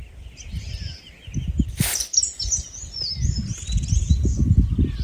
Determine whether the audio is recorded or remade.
recorded